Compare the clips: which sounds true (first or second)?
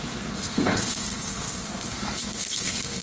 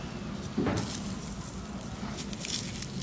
second